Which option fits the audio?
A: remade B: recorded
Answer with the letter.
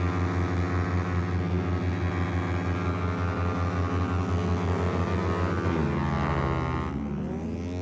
B